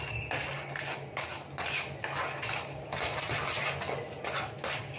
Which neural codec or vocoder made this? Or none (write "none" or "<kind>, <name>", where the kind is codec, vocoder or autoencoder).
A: none